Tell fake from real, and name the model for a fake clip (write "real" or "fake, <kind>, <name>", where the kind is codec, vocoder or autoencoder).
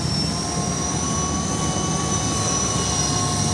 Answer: real